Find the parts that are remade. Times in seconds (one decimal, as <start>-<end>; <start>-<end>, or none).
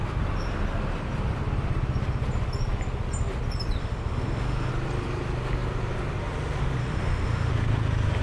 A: 3.8-4.7; 6.8-7.5